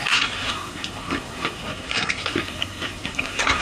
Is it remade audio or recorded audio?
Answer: remade